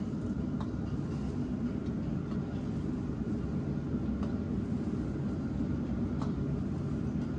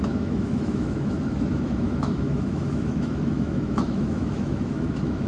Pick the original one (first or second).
first